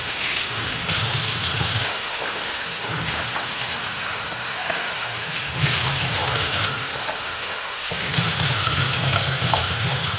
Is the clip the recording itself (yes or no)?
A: no